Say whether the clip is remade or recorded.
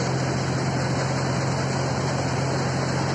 recorded